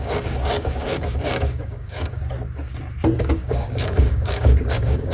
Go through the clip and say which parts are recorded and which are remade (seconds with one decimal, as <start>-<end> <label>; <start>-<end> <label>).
0.0-2.2 remade; 2.2-3.2 recorded; 3.2-5.1 remade